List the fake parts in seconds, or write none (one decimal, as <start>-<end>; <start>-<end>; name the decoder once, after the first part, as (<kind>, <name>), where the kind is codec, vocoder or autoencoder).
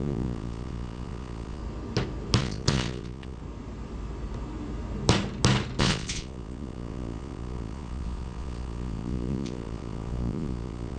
0.0-1.6 (vocoder, Vocos); 2.4-3.4; 5.8-11.0